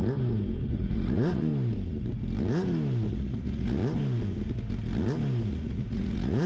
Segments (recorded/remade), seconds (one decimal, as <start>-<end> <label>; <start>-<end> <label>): 0.0-0.7 recorded; 0.7-1.5 remade; 1.5-3.1 recorded; 3.1-3.8 remade; 3.8-5.5 recorded; 5.5-6.5 remade